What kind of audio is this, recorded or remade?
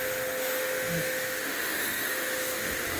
remade